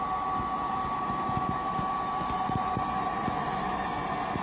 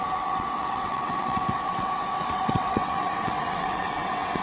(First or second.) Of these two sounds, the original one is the first